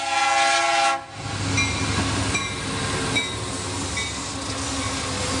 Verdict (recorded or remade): recorded